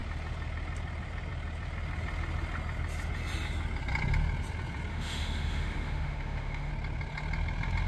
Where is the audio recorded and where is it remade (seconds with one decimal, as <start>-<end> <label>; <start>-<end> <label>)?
0.0-4.9 recorded; 4.9-6.7 remade; 6.7-7.9 recorded